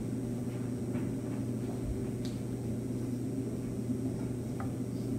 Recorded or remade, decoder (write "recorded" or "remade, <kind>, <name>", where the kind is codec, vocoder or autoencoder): recorded